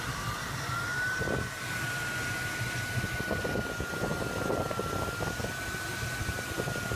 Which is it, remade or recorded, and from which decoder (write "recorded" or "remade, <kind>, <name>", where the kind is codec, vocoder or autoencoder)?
recorded